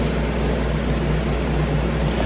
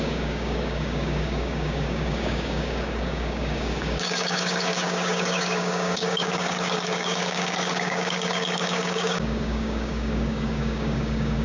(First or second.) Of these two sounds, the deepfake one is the second